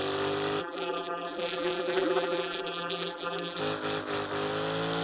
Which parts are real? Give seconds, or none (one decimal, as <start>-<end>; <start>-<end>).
0.0-0.6; 3.6-5.0